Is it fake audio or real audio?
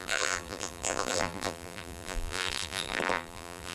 fake